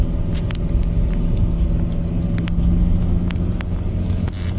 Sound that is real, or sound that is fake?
real